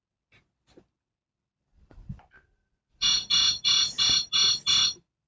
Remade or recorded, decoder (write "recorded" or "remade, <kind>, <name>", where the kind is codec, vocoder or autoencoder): recorded